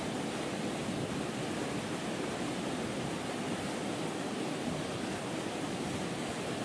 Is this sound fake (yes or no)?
no